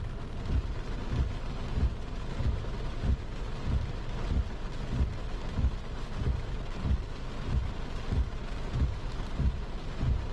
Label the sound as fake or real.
real